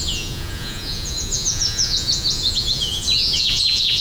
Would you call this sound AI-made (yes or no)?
yes